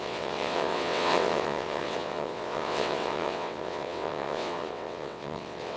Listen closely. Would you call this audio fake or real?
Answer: fake